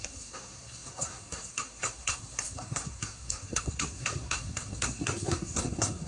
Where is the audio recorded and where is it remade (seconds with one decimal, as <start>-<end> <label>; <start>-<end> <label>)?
0.0-6.1 remade